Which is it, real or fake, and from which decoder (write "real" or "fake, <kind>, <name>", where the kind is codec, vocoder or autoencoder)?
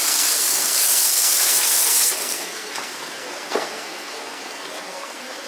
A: fake, codec, SNAC